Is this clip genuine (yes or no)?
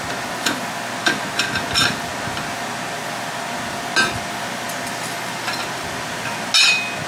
yes